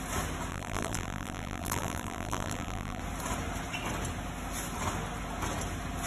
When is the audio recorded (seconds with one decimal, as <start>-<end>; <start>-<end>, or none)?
0.0-0.5; 3.0-6.1